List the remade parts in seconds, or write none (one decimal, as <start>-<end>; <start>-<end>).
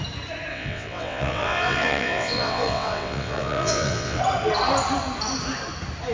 0.5-4.2